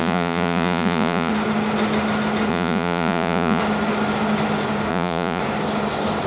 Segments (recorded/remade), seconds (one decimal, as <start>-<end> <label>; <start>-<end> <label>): 0.0-1.3 remade; 1.3-2.5 recorded; 2.5-3.6 remade; 3.6-4.9 recorded; 4.9-5.4 remade; 5.4-6.3 recorded